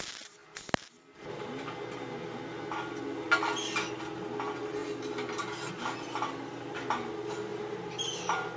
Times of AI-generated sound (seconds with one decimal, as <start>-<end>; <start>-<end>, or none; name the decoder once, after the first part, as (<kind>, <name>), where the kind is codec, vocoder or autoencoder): none